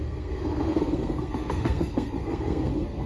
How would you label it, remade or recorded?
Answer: remade